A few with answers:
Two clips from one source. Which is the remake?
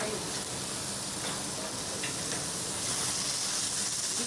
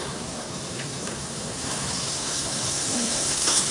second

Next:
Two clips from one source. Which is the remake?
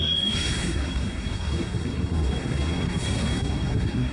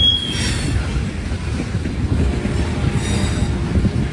first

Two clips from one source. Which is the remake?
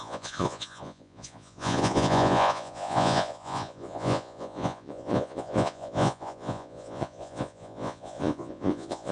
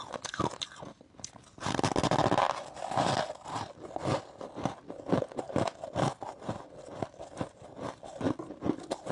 first